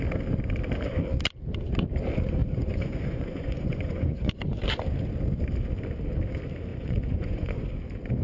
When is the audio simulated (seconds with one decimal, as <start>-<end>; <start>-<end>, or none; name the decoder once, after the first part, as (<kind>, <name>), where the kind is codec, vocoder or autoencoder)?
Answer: 2.4-4.3 (vocoder, Vocos); 6.7-7.7